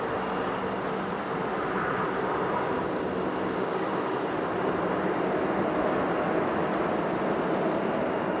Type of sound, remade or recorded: recorded